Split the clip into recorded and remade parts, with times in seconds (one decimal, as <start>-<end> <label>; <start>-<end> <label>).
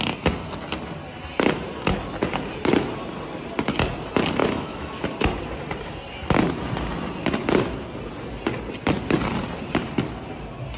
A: 0.0-4.4 recorded; 4.4-5.0 remade; 5.0-10.8 recorded